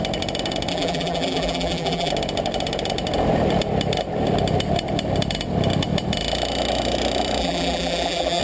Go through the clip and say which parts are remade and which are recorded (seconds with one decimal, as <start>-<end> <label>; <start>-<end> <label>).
0.0-0.7 recorded; 0.7-2.1 remade; 2.1-7.4 recorded; 7.4-8.4 remade